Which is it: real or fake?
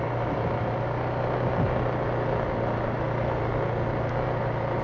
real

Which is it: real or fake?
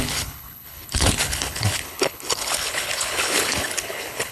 fake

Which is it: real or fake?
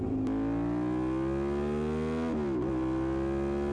real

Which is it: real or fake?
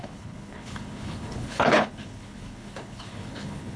fake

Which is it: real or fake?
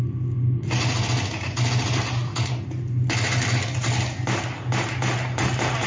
real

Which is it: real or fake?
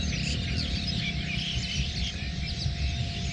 real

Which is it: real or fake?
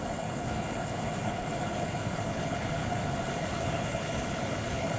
fake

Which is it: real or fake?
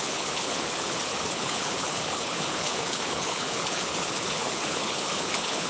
fake